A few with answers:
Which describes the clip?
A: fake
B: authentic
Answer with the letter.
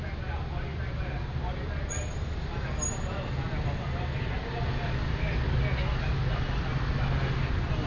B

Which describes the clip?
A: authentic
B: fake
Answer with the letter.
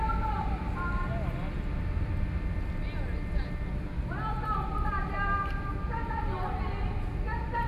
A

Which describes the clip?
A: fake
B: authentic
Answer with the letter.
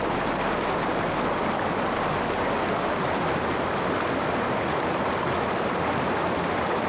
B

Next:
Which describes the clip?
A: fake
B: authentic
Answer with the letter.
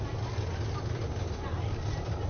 B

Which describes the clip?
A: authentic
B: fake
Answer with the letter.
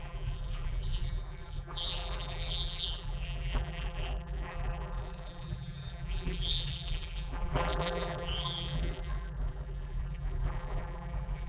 B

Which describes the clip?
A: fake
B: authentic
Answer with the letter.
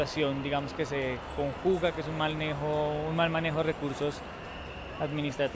B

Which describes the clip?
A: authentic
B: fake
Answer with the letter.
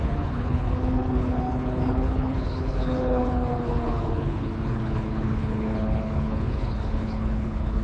B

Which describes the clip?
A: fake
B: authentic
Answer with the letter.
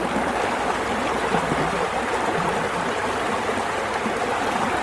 B